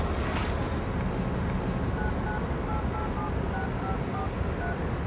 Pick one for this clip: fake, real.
real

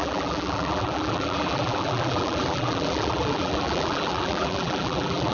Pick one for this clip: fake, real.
fake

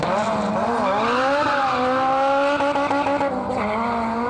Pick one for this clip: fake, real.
real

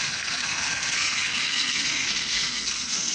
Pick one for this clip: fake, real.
fake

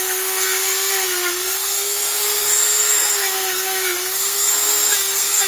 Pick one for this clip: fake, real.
fake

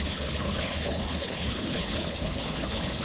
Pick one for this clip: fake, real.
fake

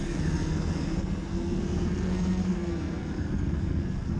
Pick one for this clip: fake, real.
fake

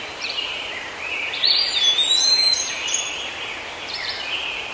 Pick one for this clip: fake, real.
fake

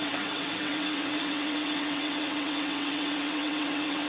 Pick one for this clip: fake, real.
fake